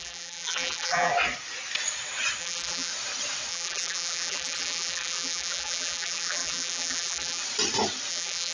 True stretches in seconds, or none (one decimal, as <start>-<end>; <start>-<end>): 1.1-2.4; 2.9-3.5; 7.4-8.1

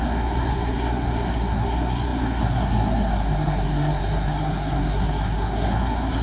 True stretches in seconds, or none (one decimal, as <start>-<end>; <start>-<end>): none

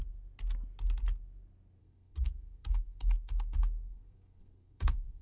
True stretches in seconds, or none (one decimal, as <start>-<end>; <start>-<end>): 0.0-1.8

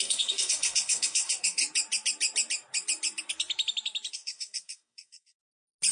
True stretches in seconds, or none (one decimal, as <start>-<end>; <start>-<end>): 1.6-4.1; 5.4-5.9

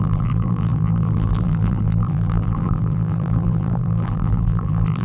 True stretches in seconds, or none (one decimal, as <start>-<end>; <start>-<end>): none

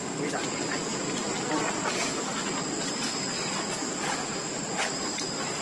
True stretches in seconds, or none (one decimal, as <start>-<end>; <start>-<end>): 0.0-5.6